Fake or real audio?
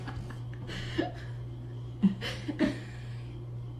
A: real